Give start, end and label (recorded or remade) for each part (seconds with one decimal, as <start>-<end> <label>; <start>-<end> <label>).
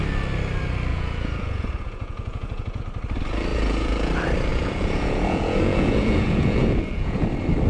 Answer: 0.0-0.9 recorded; 0.9-2.8 remade; 2.8-3.5 recorded; 3.5-4.1 remade; 4.1-4.5 recorded; 4.5-7.2 remade; 7.2-7.7 recorded